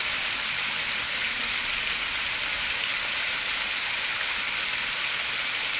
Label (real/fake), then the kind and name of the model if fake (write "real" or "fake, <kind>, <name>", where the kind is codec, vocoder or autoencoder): real